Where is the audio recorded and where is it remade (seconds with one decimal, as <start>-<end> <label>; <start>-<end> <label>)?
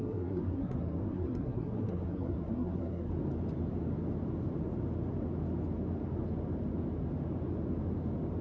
0.0-3.1 remade; 3.1-8.4 recorded